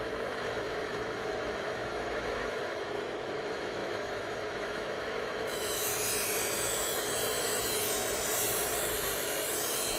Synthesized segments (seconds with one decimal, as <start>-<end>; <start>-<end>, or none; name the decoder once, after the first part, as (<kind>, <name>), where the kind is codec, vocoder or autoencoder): 0.0-5.9 (autoencoder, DAC-VAE); 7.4-8.0